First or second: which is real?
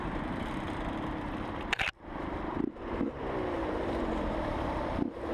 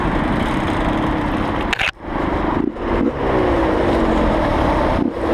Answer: second